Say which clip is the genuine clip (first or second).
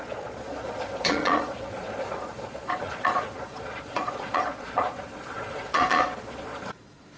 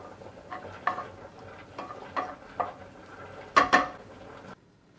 second